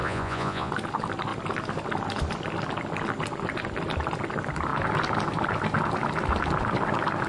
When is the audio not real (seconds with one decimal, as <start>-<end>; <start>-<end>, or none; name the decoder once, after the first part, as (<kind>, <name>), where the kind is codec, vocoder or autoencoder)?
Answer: 0.0-0.7 (vocoder, Vocos)